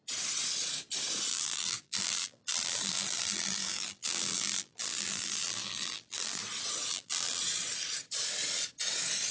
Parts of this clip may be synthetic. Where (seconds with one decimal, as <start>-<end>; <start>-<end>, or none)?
1.3-6.4; 6.9-7.4